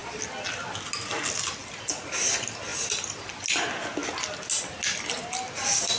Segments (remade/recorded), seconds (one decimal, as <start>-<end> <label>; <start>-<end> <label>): 0.0-1.6 recorded; 1.6-2.3 remade; 2.3-6.0 recorded

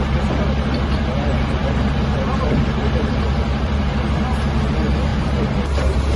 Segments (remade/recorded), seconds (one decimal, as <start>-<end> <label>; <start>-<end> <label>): 0.0-1.6 recorded; 1.6-3.9 remade; 3.9-5.1 recorded; 5.1-6.2 remade

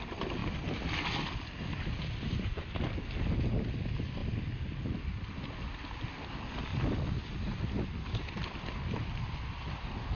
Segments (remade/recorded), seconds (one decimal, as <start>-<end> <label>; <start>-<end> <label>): 0.0-6.7 recorded; 6.7-8.9 remade; 8.9-10.1 recorded

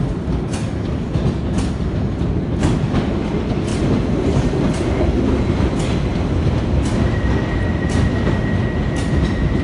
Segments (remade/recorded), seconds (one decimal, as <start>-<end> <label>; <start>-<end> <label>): 0.0-3.7 recorded; 3.7-4.5 remade; 4.5-9.6 recorded